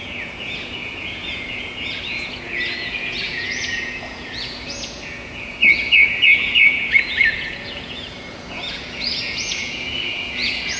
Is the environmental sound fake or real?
fake